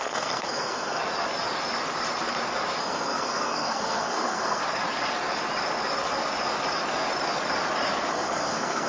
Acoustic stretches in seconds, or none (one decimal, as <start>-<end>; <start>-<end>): 1.0-2.8; 4.6-8.1